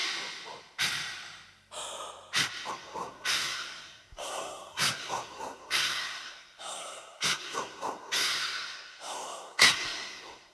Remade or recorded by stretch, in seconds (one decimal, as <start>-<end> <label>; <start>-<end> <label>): 0.0-2.7 recorded; 2.7-10.5 remade